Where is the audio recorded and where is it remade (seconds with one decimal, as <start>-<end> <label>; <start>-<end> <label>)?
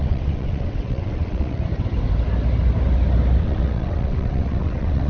0.0-1.6 remade; 1.6-3.4 recorded; 3.4-5.1 remade